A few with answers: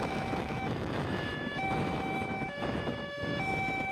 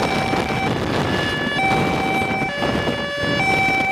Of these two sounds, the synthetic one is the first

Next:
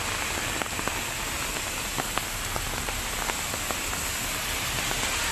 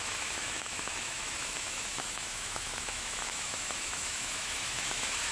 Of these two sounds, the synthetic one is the second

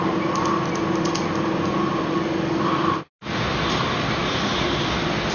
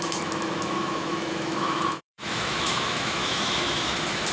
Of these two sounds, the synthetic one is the second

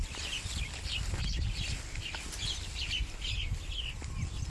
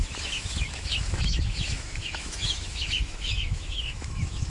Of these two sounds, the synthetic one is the second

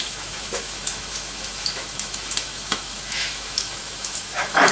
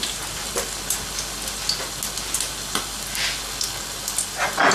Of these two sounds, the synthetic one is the first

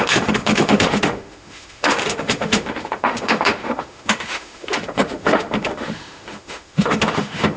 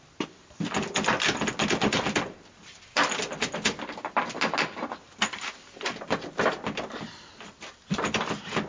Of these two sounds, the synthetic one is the first